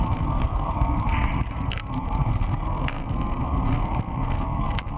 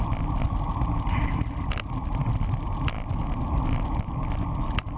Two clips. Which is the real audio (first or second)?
second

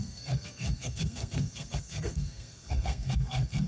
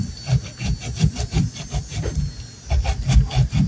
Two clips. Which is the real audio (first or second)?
second